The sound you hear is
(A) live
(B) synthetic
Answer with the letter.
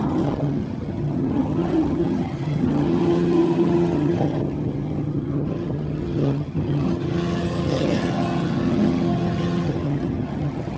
B